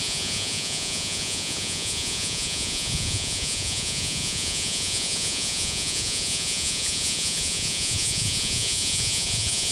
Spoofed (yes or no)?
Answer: yes